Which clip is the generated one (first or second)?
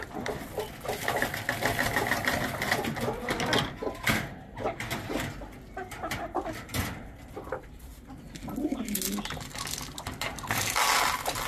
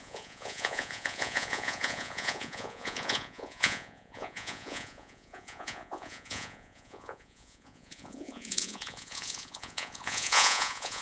second